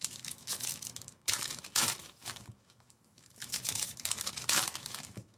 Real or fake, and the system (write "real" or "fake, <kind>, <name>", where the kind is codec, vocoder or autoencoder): fake, autoencoder, DAC-VAE